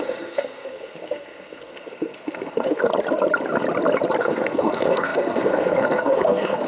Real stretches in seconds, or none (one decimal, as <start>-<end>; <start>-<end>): 2.8-4.2